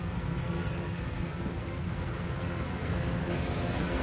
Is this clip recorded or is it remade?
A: remade